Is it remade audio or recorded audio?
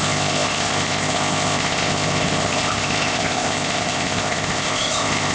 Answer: remade